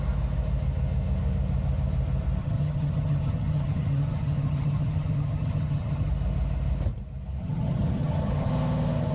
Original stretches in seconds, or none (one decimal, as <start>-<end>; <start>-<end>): 0.0-2.4; 6.1-7.4; 8.5-9.1